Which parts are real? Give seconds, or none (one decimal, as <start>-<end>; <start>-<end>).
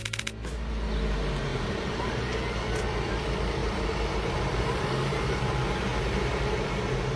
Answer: 0.0-1.5; 2.2-3.6; 5.5-5.9; 6.8-7.2